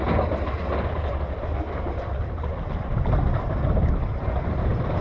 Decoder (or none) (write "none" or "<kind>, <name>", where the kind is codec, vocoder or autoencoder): none